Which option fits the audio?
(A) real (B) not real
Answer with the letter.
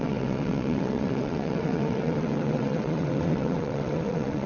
B